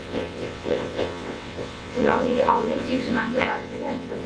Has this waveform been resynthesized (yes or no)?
yes